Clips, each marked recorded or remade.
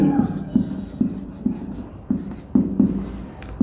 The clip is recorded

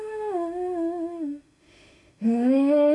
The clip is remade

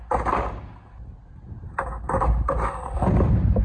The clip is recorded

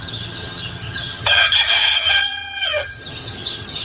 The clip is remade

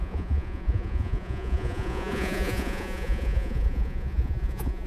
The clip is remade